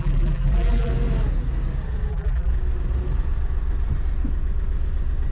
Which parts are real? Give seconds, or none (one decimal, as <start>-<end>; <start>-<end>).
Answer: 0.9-2.1; 2.5-5.3